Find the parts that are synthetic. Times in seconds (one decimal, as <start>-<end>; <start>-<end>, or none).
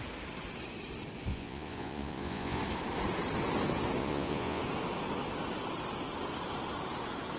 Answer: 1.3-2.6; 4.0-4.6